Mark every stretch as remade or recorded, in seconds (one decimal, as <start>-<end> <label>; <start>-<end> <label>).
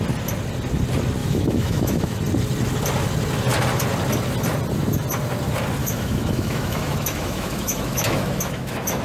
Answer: 0.0-1.2 recorded; 1.2-2.2 remade; 2.2-5.8 recorded; 5.8-9.0 remade